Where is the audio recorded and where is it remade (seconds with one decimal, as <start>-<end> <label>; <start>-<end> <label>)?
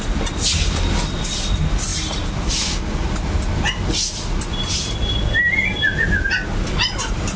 0.0-7.4 recorded